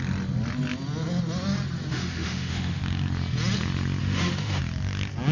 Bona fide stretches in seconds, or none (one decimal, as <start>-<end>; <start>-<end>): 0.0-1.9; 2.8-4.0; 4.6-5.3